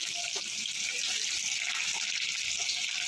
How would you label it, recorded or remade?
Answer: recorded